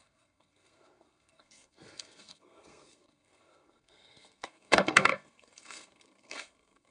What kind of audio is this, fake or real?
fake